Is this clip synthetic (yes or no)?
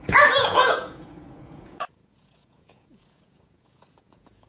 yes